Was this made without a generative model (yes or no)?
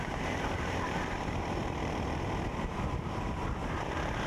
no